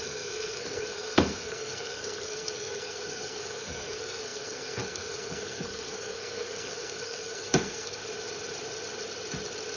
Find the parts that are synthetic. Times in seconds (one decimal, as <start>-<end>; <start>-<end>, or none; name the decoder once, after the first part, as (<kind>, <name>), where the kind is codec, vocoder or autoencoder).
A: 0.0-8.0 (codec, SNAC)